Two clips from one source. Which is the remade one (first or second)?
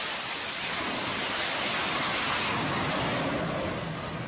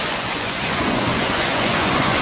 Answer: second